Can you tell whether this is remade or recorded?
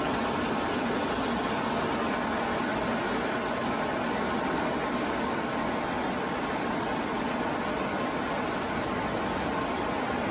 recorded